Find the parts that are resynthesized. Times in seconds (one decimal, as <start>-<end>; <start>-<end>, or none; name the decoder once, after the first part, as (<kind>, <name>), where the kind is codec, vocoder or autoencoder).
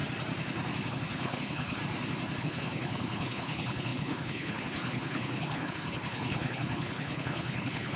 0.9-1.8 (codec, HILCodec); 2.4-8.0